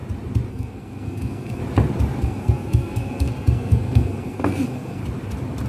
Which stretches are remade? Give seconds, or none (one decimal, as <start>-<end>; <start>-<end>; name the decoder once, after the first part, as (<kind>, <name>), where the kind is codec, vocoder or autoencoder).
0.5-1.6 (codec, SNAC); 2.2-5.0